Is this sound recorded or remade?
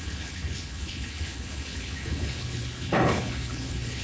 remade